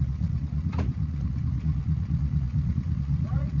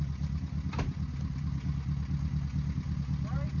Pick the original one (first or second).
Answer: second